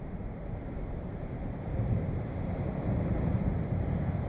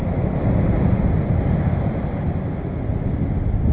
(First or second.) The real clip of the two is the second